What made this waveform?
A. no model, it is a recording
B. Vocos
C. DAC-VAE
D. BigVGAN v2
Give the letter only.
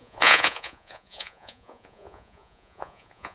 B